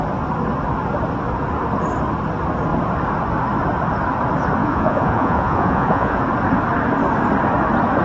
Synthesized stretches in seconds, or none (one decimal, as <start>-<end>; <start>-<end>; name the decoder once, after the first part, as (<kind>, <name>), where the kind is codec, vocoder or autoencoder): 4.6-6.2 (vocoder, Vocos)